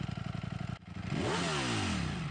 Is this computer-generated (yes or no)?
no